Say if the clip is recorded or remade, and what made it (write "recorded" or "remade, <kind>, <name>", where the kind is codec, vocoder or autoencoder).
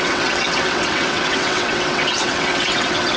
remade, vocoder, WaveNeXt